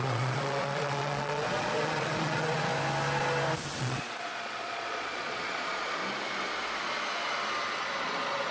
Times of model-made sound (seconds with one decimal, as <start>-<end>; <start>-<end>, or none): 0.0-2.7; 3.8-6.0; 7.8-8.5